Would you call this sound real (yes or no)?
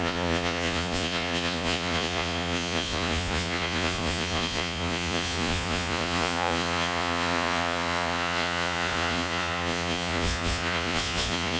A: no